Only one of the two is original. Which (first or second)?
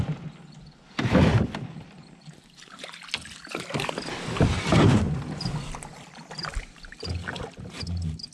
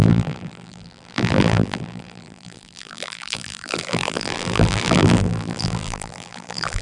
first